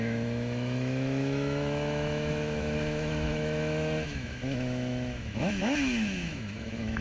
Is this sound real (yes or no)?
no